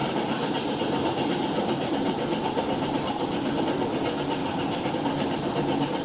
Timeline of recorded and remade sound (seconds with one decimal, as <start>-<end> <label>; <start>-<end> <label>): 0.0-3.6 remade; 3.6-6.0 recorded